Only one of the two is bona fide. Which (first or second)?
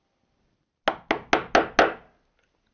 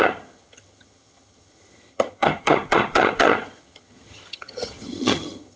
first